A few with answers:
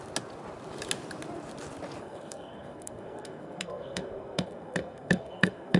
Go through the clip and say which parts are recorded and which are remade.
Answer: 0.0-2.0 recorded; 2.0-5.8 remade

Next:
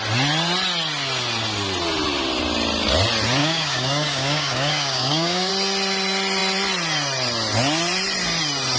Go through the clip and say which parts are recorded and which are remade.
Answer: 0.0-3.4 recorded; 3.4-5.5 remade; 5.5-8.8 recorded

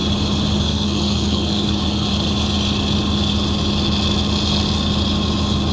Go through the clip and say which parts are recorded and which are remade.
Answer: 0.0-0.6 recorded; 0.6-2.1 remade; 2.1-5.7 recorded